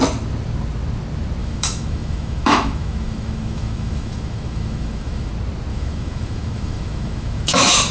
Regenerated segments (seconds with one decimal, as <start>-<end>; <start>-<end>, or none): 1.4-5.3; 5.7-7.9